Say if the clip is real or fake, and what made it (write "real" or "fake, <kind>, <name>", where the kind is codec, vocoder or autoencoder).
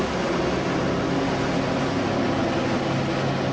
real